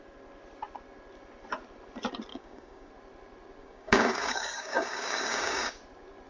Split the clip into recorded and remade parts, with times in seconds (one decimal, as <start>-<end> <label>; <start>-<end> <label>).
0.0-2.3 recorded; 2.3-2.9 remade; 2.9-3.6 recorded; 3.6-5.8 remade; 5.8-6.3 recorded